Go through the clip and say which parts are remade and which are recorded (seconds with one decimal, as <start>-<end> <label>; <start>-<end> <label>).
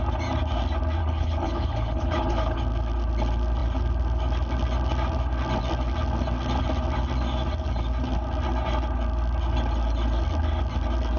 0.0-1.0 recorded; 1.0-2.6 remade; 2.6-11.2 recorded